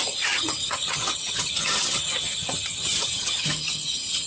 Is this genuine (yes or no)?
no